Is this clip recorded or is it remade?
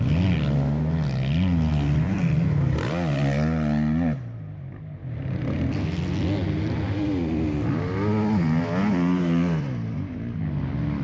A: recorded